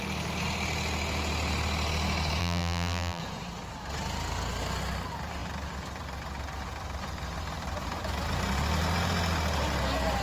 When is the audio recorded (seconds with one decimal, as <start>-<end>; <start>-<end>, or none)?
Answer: 0.0-2.4; 3.2-10.2